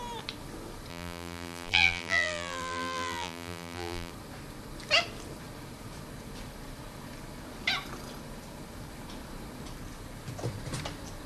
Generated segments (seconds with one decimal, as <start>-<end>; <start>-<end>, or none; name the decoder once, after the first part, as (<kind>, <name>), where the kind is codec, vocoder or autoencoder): 0.9-4.1 (vocoder, BigVGAN v2)